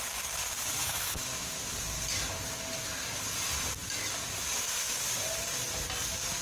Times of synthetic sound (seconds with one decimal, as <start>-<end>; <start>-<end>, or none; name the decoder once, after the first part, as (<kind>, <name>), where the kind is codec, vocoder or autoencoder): 0.8-1.6 (autoencoder, DAC-VAE)